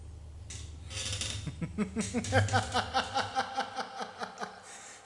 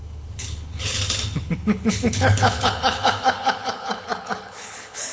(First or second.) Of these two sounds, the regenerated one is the second